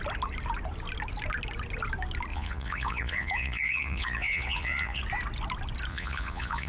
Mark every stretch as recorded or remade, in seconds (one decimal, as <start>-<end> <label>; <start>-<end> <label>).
0.0-2.3 recorded; 2.3-5.0 remade; 5.0-5.9 recorded; 5.9-6.7 remade